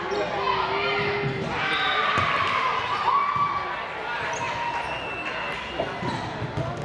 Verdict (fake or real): real